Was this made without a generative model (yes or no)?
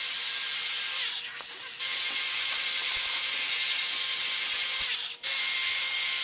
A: no